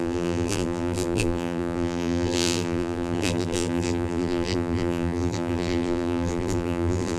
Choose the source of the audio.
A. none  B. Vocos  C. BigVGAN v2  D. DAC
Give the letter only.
C